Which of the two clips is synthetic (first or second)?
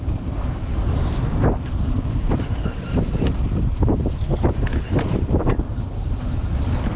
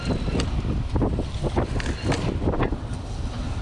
first